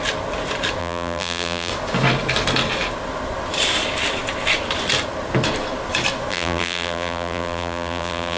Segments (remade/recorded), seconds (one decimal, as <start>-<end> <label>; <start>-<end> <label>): 0.0-0.8 recorded; 0.8-1.7 remade; 1.7-6.3 recorded; 6.3-8.4 remade